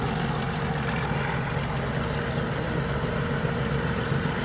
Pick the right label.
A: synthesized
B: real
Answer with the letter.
B